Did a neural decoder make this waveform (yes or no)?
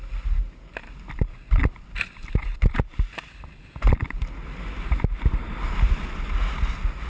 no